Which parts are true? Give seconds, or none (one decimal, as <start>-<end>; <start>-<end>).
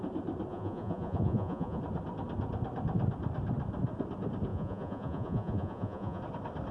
0.0-0.5; 1.8-4.5; 6.2-6.7